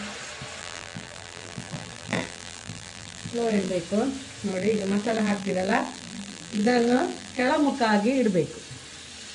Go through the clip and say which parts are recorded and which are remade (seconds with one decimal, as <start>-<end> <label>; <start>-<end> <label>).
0.0-0.6 recorded; 0.6-3.7 remade; 3.7-4.5 recorded; 4.5-7.5 remade; 7.5-9.3 recorded